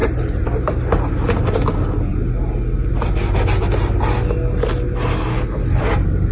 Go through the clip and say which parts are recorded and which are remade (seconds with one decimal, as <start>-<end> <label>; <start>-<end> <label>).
0.0-5.3 recorded; 5.3-5.8 remade; 5.8-6.3 recorded

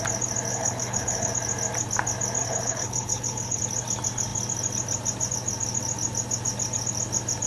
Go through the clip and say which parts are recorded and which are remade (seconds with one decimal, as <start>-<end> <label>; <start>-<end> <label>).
0.0-0.5 recorded; 0.5-1.3 remade; 1.3-2.4 recorded; 2.4-3.6 remade; 3.6-7.5 recorded

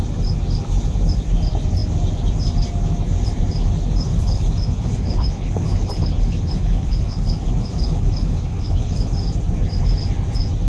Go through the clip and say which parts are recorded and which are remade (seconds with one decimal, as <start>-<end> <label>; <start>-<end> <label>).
0.0-4.1 recorded; 4.1-9.1 remade; 9.1-10.7 recorded

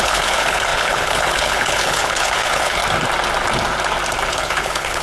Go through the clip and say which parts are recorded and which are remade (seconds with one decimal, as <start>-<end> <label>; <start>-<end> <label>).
0.0-2.8 remade; 2.8-4.3 recorded; 4.3-5.0 remade

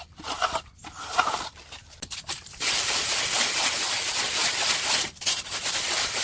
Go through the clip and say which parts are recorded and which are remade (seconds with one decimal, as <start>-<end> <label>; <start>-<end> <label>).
0.0-6.2 recorded

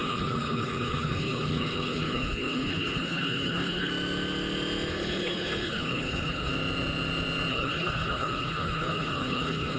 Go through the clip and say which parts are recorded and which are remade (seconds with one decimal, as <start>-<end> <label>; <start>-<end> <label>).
0.0-3.9 remade; 3.9-4.9 recorded; 4.9-6.5 remade; 6.5-7.5 recorded; 7.5-9.8 remade

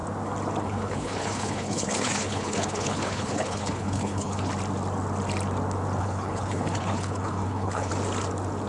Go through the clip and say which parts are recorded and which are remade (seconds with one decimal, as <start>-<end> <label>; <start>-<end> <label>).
0.0-0.6 recorded; 0.6-4.5 remade; 4.5-6.0 recorded; 6.0-7.9 remade; 7.9-8.7 recorded

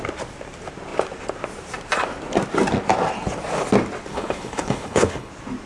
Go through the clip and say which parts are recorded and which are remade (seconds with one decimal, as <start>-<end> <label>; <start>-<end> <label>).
0.0-4.1 recorded; 4.1-5.3 remade; 5.3-5.7 recorded